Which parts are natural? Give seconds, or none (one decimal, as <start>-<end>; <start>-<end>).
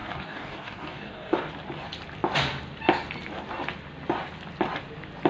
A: 1.5-5.3